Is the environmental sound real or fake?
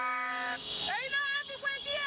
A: fake